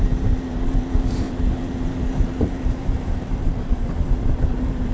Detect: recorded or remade remade